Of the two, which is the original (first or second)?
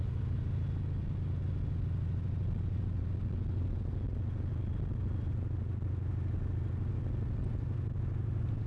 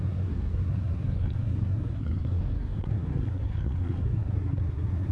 first